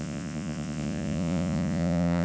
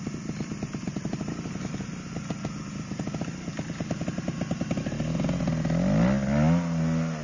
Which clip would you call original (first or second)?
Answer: second